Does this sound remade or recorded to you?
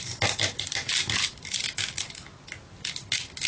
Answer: recorded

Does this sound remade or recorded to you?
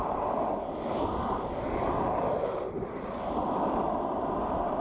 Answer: recorded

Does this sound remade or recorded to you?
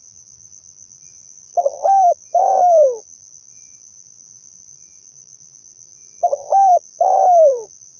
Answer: remade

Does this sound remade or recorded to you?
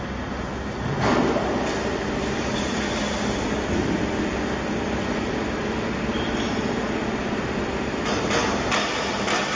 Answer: recorded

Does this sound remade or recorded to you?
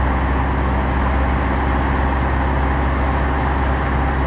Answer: recorded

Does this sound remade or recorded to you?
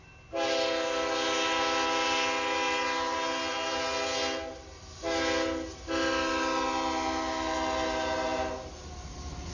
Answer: recorded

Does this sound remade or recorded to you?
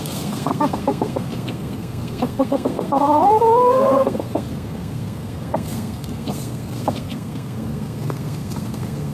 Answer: remade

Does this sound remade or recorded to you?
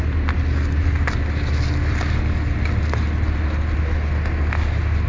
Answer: recorded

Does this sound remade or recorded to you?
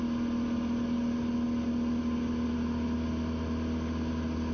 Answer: recorded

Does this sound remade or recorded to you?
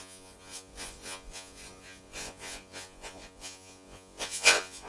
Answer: remade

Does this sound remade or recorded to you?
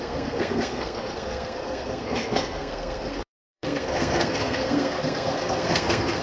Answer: remade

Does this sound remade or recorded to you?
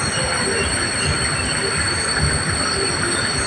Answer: recorded